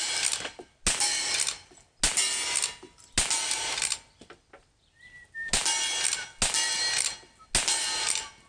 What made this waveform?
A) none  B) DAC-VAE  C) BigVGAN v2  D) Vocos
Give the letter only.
A